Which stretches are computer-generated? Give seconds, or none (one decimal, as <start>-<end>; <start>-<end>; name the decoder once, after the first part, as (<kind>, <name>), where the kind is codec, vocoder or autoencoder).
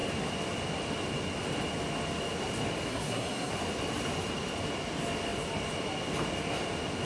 2.9-3.5 (codec, SNAC)